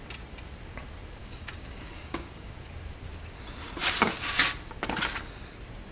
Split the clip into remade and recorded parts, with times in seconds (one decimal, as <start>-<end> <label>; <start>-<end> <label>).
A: 0.0-1.2 recorded; 1.2-2.5 remade; 2.5-5.9 recorded